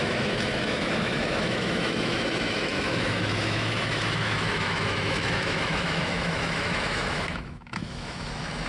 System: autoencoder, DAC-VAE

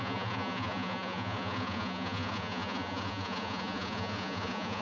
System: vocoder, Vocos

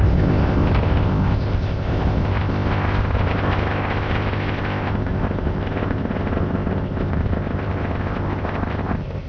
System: codec, ZipCodec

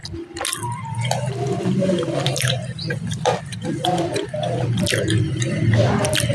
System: vocoder, BigVGAN v2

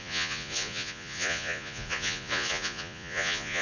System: vocoder, Vocos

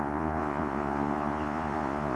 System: vocoder, Vocos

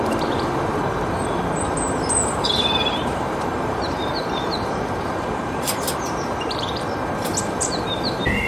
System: vocoder, BigVGAN v2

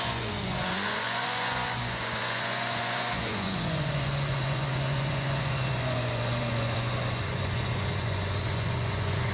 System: vocoder, Vocos